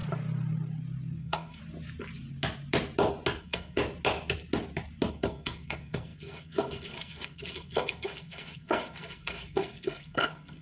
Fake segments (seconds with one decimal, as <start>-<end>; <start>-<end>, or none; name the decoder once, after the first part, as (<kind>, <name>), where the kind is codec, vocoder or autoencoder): 1.2-1.6 (codec, SNAC); 3.4-3.8; 5.1-10.6